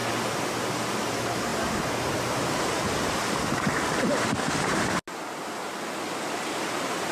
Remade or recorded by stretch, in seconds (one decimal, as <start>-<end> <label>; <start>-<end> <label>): 0.0-7.1 recorded